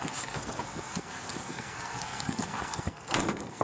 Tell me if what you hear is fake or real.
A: fake